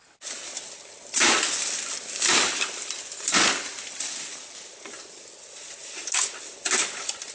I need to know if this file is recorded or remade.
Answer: recorded